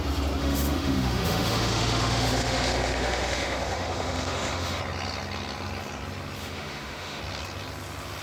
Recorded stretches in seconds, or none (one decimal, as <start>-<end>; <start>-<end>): 0.0-0.4; 4.8-6.4; 7.2-8.2